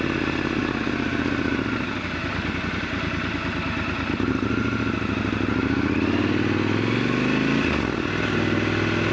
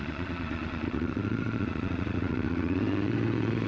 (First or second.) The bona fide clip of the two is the first